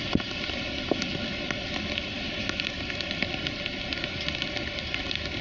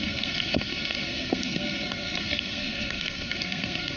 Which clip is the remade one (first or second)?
second